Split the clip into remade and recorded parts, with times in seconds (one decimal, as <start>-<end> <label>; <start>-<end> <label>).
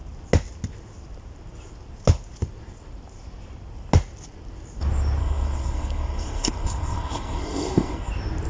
0.0-5.2 recorded; 5.2-8.1 remade; 8.1-8.5 recorded